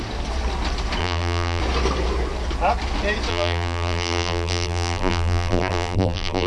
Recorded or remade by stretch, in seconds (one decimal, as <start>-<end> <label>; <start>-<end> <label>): 0.0-1.0 recorded; 1.0-1.6 remade; 1.6-3.3 recorded; 3.3-6.5 remade